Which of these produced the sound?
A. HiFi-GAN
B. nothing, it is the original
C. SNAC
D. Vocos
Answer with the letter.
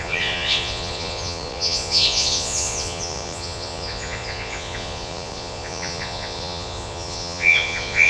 D